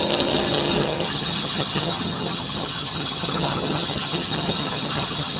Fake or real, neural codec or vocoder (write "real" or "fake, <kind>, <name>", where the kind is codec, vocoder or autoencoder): fake, vocoder, HiFi-GAN